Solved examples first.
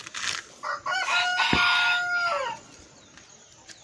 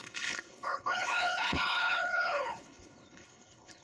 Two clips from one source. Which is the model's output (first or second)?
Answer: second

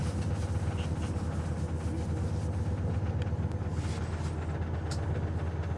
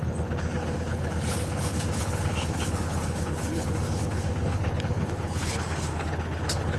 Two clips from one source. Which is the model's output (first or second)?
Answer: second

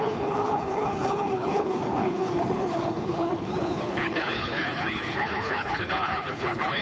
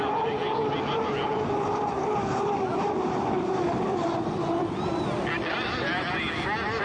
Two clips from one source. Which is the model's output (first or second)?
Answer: first